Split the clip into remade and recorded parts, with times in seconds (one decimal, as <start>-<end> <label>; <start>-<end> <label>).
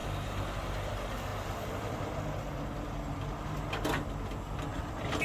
0.0-1.3 recorded; 1.3-2.0 remade; 2.0-4.7 recorded; 4.7-5.2 remade